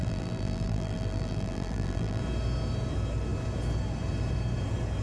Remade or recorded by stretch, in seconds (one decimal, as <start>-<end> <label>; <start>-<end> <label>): 0.0-2.2 remade; 2.2-5.0 recorded